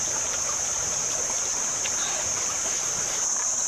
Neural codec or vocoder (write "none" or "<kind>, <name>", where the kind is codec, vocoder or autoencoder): vocoder, BigVGAN v2